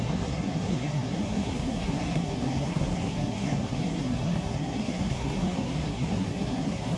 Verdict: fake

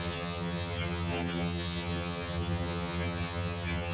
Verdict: fake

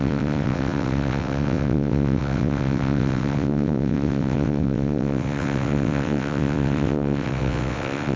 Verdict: fake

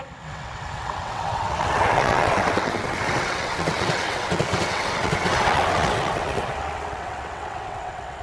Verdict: fake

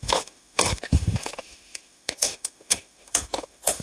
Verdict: fake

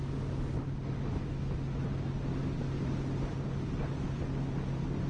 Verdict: real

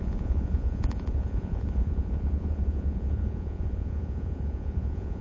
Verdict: fake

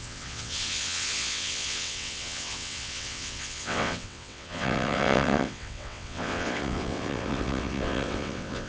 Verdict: fake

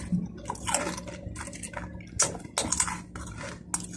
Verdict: real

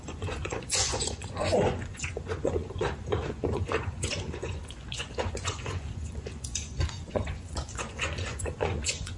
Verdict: fake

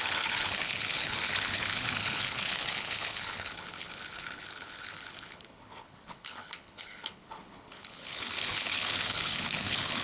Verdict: fake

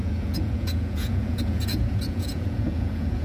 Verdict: fake